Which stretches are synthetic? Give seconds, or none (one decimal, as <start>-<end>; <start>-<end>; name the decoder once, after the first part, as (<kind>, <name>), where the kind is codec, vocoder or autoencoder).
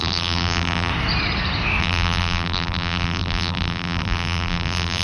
0.0-0.9 (vocoder, BigVGAN v2); 1.8-5.0